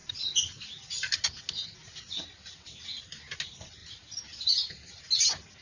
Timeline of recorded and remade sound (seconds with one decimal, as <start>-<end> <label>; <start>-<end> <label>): 0.0-3.8 recorded; 3.8-5.0 remade; 5.0-5.6 recorded